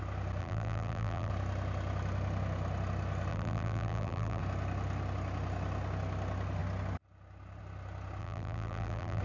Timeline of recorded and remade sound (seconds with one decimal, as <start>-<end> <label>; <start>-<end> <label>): 0.0-0.4 recorded; 0.4-1.3 remade; 1.3-3.3 recorded; 3.3-4.4 remade; 4.4-8.2 recorded; 8.2-9.2 remade